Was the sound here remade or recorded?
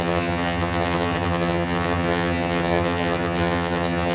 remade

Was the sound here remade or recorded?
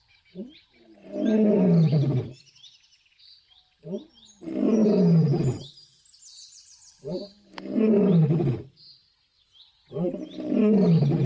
recorded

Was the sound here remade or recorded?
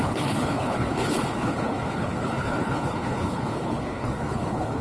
remade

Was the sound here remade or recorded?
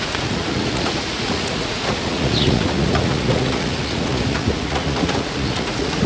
remade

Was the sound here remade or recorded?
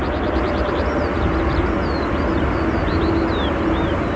recorded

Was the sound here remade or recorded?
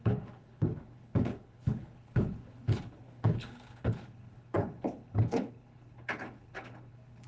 remade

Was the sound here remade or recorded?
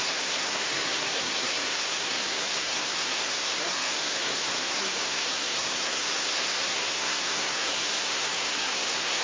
remade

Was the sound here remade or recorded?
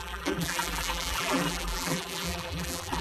remade